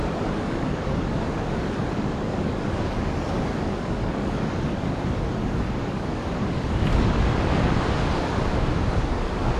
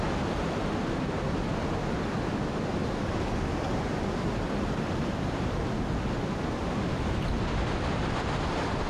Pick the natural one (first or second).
second